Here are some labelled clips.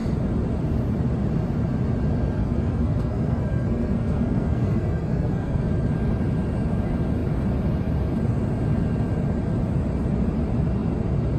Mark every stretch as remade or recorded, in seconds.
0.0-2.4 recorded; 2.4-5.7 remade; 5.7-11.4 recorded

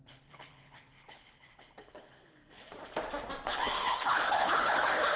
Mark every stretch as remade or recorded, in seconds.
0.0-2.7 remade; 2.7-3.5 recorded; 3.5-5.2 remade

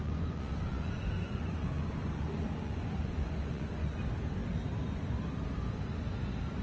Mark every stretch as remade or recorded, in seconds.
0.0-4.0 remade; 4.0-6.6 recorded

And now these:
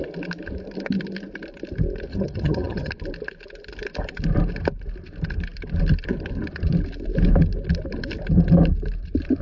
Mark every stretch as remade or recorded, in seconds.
0.0-2.1 recorded; 2.1-2.9 remade; 2.9-9.4 recorded